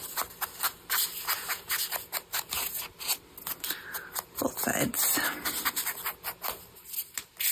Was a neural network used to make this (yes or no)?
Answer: no